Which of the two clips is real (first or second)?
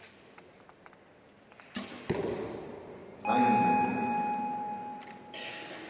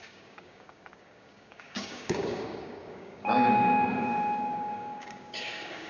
first